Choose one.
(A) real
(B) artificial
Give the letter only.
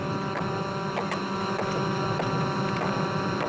A